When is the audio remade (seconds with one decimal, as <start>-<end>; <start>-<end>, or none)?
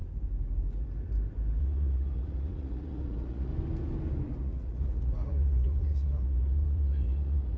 1.6-3.5; 4.4-7.6